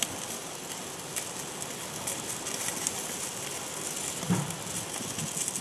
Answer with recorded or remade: recorded